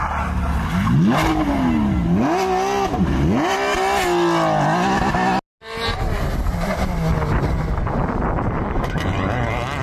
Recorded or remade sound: recorded